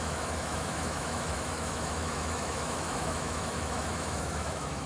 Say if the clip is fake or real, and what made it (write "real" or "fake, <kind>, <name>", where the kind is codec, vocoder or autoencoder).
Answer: fake, autoencoder, DAC-VAE